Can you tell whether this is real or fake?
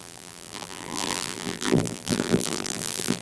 fake